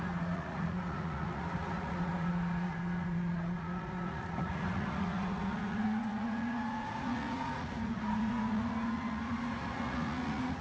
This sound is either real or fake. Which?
fake